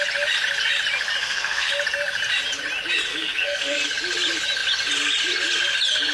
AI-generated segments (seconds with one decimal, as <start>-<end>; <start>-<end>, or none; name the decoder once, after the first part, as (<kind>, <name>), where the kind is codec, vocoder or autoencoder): 1.2-1.7 (codec, SNAC); 3.1-3.8

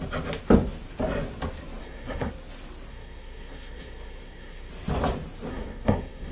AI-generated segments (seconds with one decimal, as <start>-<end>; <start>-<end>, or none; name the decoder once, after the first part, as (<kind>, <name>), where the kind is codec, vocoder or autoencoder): 1.8-2.3 (codec, SNAC); 2.9-4.7; 5.5-6.3